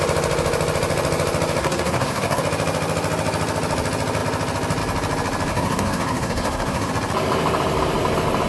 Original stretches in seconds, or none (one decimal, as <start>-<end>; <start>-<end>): 0.0-1.6; 2.4-5.5; 6.9-8.5